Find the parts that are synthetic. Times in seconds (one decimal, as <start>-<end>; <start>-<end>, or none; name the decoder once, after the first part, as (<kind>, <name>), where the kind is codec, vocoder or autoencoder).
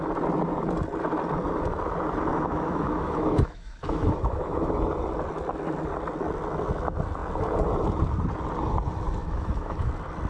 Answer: 2.3-4.6 (autoencoder, DAC-VAE); 9.2-9.9